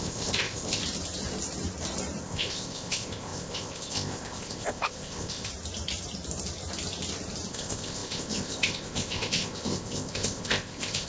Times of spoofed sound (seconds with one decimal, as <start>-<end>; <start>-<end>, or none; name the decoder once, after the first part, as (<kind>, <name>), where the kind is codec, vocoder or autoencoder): 0.0-0.8 (codec, ZipCodec); 2.2-5.5; 7.5-11.1